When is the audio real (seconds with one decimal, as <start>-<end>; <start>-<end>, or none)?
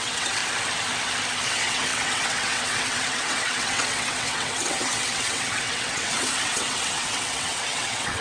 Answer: 0.4-1.5